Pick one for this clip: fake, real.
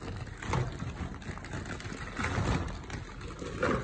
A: real